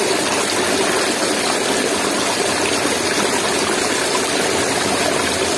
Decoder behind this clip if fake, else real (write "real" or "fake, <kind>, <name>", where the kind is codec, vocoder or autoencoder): real